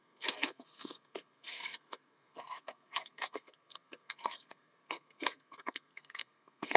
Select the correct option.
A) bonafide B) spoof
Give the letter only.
B